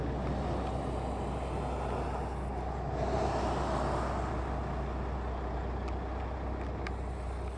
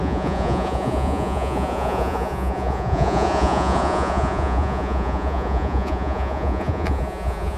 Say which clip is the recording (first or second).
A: first